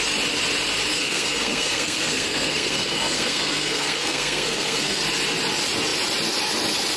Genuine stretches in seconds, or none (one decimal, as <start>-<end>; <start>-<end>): 0.0-0.9; 5.0-7.0